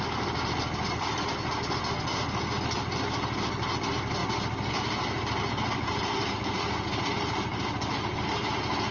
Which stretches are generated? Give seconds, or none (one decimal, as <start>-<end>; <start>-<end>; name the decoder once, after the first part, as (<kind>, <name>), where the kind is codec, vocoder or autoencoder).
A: none